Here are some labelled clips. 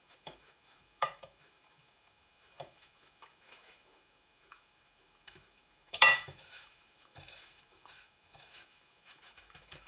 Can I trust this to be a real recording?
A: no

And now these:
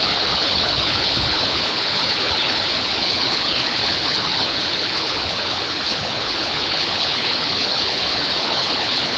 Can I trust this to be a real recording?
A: no